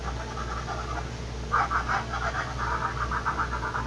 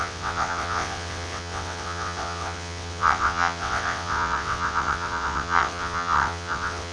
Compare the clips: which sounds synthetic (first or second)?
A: second